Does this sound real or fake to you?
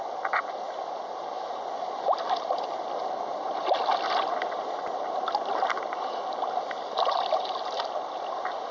real